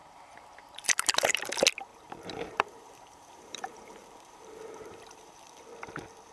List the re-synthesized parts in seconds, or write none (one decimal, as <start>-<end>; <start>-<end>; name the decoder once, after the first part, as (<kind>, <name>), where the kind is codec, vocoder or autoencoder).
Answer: 0.0-1.4 (vocoder, BigVGAN v2); 1.9-5.7